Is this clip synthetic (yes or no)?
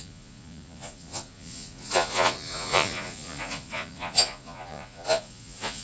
yes